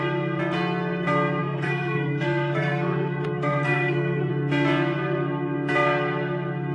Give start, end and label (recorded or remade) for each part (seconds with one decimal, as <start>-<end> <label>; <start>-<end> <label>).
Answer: 0.0-1.4 recorded; 1.4-4.3 remade; 4.3-6.7 recorded